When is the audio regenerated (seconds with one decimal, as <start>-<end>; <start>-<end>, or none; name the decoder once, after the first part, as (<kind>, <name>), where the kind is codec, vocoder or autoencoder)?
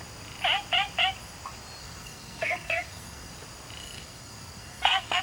1.8-3.3 (codec, SNAC); 3.8-5.2